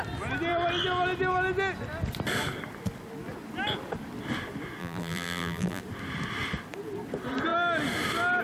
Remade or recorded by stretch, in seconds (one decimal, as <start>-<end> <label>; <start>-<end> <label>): 0.0-4.8 recorded; 4.8-5.8 remade; 5.8-8.4 recorded

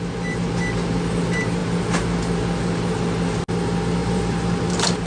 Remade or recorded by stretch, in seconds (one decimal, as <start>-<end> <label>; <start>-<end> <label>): 0.0-4.0 recorded; 4.0-5.1 remade

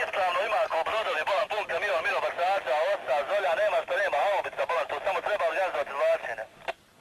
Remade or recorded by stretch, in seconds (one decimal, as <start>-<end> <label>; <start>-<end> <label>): 0.0-0.9 recorded; 0.9-1.5 remade; 1.5-7.0 recorded

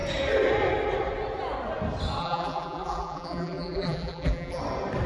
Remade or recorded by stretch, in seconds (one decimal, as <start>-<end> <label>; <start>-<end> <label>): 0.0-2.2 recorded; 2.2-4.6 remade; 4.6-5.1 recorded